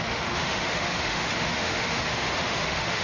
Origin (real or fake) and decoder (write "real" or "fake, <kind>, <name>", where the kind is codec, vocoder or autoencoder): fake, autoencoder, DAC-VAE